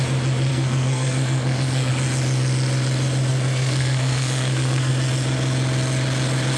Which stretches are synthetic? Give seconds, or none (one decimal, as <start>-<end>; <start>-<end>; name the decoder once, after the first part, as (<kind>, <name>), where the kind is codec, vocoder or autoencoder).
0.5-1.9 (codec, SNAC); 3.3-4.9